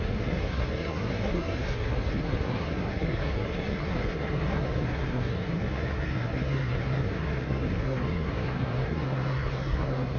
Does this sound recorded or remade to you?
remade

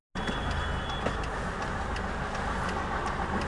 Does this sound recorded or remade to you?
recorded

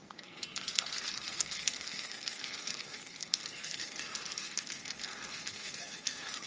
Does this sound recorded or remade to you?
remade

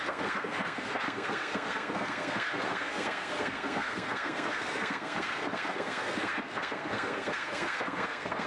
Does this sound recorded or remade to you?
remade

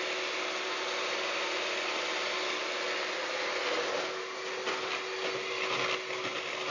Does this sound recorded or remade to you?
recorded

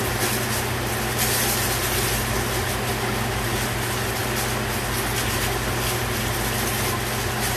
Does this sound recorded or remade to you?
recorded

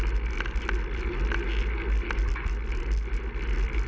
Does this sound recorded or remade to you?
recorded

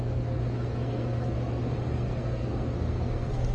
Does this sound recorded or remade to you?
remade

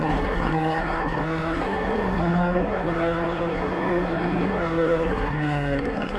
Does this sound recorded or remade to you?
remade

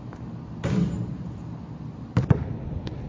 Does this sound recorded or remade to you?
recorded